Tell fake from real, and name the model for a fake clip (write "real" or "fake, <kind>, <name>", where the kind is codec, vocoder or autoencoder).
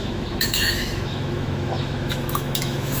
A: fake, autoencoder, DAC-VAE